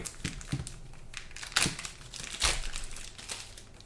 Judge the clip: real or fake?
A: real